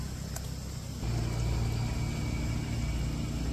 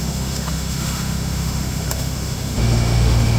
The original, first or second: first